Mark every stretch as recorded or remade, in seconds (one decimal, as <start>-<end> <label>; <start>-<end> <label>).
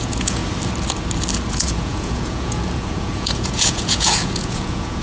0.0-0.4 remade; 0.4-1.5 recorded; 1.5-5.0 remade